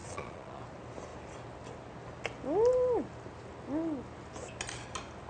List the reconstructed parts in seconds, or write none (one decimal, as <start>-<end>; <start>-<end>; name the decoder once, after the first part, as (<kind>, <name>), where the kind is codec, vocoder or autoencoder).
0.0-0.6 (vocoder, Vocos)